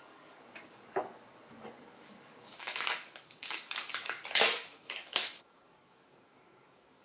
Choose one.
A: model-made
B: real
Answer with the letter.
A